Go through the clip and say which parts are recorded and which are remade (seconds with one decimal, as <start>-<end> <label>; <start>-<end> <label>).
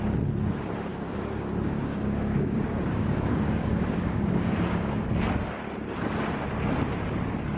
0.0-0.9 recorded; 0.9-5.0 remade; 5.0-7.6 recorded